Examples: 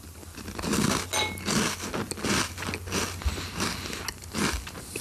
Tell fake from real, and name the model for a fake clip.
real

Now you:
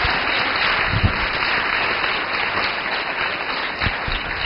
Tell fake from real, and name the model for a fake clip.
real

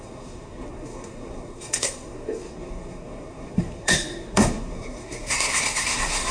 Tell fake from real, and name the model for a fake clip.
fake, codec, SNAC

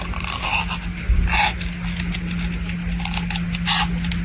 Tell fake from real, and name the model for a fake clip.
real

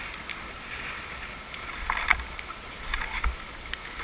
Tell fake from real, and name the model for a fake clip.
real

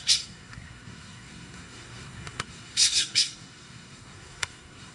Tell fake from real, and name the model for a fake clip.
fake, codec, SNAC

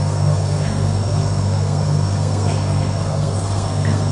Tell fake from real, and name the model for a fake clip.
fake, codec, SNAC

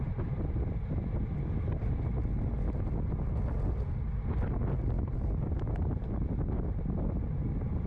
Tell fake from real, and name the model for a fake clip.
real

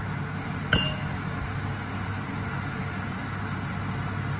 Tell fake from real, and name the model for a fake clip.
real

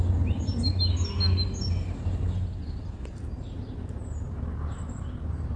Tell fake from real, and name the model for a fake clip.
real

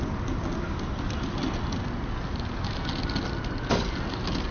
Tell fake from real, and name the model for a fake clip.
real